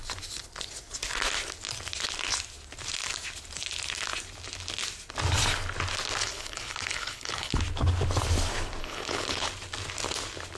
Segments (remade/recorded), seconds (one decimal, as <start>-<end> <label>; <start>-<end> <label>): 0.0-6.2 recorded; 6.2-7.6 remade; 7.6-8.8 recorded; 8.8-9.5 remade; 9.5-10.6 recorded